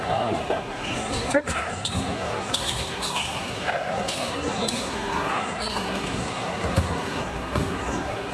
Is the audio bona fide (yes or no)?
no